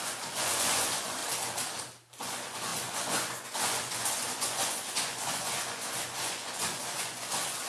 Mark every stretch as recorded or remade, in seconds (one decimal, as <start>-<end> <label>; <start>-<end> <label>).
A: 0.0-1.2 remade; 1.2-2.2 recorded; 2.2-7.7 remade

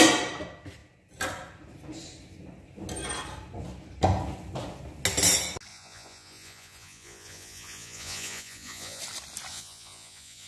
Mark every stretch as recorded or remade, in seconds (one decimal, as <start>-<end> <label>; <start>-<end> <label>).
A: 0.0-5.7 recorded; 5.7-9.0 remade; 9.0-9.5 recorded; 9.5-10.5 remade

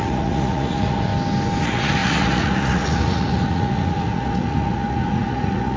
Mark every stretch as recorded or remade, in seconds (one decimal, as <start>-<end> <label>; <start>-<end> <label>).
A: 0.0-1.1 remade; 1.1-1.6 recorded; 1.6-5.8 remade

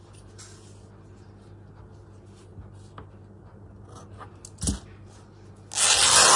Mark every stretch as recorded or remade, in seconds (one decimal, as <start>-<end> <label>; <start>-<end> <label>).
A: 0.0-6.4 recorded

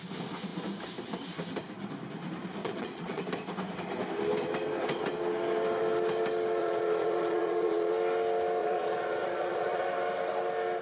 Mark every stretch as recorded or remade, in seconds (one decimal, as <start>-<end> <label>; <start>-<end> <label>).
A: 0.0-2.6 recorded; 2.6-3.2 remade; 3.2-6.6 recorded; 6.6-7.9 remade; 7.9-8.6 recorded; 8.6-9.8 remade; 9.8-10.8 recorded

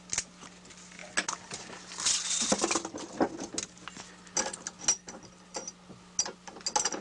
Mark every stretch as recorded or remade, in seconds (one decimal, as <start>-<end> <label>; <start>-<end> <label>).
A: 0.0-7.0 recorded

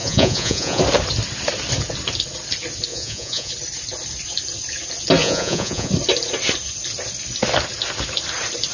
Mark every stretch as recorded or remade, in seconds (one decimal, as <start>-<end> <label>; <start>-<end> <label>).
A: 0.0-0.8 remade; 0.8-2.9 recorded; 2.9-3.5 remade; 3.5-5.2 recorded; 5.2-5.9 remade; 5.9-8.7 recorded